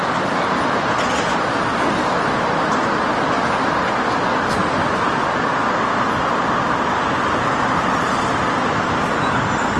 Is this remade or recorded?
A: recorded